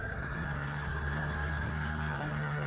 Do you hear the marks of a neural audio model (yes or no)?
yes